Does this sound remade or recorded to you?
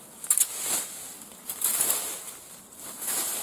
recorded